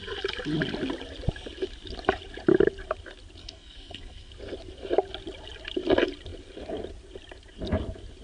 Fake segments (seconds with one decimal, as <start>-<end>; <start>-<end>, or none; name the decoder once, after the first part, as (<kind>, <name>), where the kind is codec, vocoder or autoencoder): 3.4-4.3 (codec, SNAC)